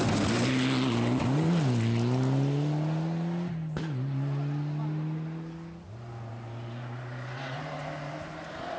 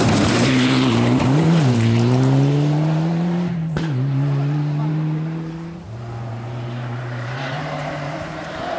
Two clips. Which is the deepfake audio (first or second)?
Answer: second